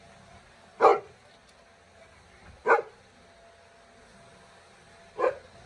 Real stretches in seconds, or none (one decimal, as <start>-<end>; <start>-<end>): 0.0-0.9; 3.2-5.7